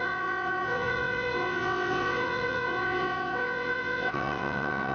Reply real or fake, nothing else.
fake